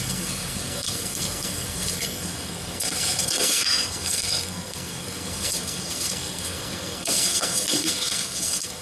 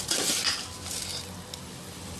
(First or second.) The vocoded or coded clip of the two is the first